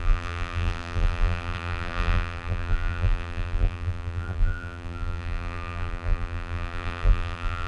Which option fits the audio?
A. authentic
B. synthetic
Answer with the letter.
B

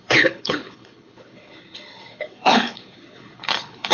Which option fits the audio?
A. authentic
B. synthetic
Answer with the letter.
B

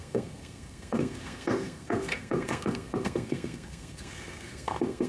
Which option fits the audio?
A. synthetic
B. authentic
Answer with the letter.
A